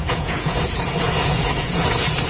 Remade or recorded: remade